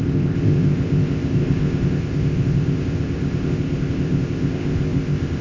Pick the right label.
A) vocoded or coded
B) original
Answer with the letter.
A